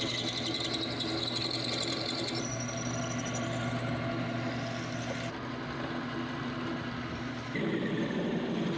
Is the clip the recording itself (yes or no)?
yes